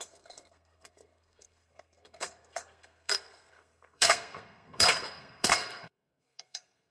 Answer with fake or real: fake